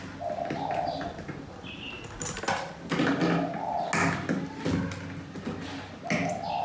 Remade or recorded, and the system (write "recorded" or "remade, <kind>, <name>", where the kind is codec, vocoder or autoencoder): recorded